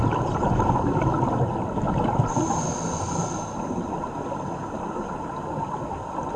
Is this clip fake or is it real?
real